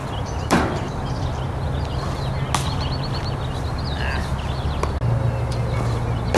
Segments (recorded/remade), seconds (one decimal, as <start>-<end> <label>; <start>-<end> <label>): 0.0-1.3 remade; 1.3-6.4 recorded